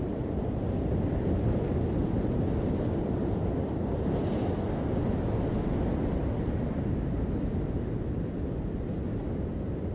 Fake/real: real